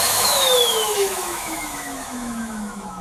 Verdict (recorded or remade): remade